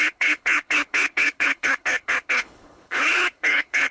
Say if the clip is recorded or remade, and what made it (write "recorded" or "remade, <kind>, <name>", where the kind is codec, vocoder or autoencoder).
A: remade, codec, HILCodec